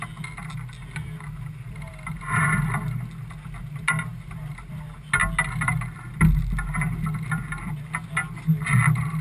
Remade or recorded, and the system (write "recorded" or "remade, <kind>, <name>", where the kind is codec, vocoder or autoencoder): recorded